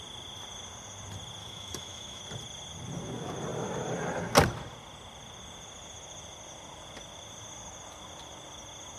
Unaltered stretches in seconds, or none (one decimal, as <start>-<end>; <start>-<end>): 0.0-1.4; 2.2-9.0